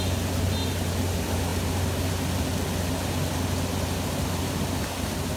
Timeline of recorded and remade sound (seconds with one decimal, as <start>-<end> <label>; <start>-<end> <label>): 0.0-5.4 recorded